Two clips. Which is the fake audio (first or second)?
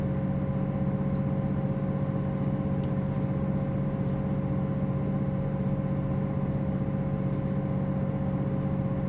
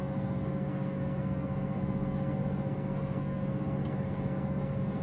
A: second